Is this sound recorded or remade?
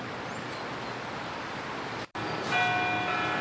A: recorded